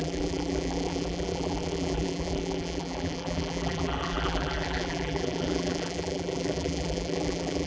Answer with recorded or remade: remade